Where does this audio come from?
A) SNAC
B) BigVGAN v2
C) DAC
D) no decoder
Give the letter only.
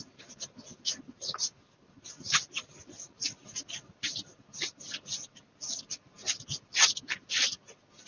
D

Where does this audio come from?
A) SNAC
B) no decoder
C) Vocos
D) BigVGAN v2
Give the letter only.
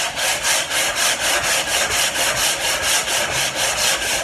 B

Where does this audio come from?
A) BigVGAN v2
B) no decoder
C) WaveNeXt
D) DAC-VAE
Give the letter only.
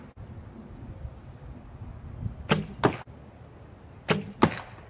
B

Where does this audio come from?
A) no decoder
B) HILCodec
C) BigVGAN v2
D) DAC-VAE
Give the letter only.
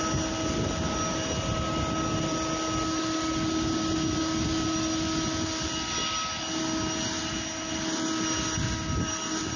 A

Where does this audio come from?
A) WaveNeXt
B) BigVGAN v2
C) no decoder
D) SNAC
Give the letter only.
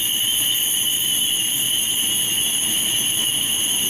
C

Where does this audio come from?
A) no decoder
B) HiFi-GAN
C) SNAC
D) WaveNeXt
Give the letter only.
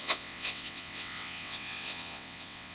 D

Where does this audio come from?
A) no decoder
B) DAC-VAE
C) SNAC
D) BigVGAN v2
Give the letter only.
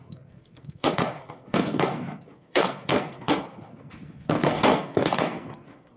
C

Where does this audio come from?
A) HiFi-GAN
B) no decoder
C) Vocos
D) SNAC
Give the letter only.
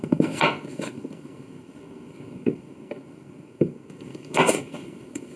D